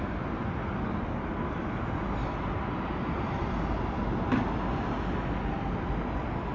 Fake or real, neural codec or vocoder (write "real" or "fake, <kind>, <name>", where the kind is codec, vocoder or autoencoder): real